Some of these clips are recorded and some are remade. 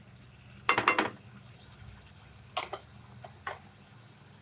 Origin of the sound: recorded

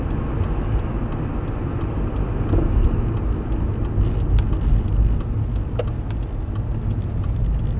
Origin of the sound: recorded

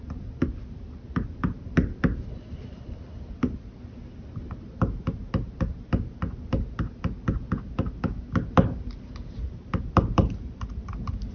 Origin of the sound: recorded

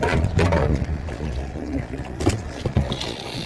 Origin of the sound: remade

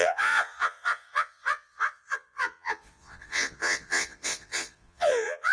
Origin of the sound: remade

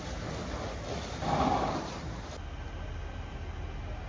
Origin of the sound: recorded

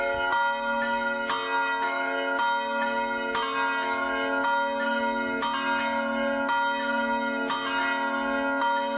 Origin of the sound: recorded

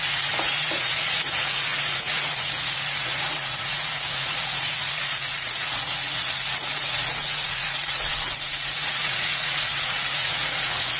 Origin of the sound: remade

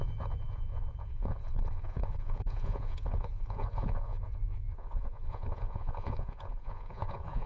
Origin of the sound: remade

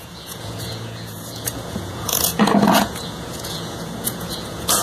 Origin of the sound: remade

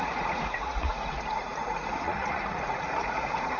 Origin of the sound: remade